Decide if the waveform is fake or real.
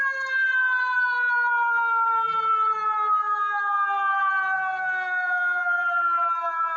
real